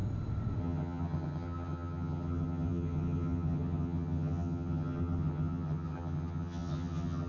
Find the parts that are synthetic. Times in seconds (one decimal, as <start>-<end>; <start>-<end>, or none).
0.6-7.3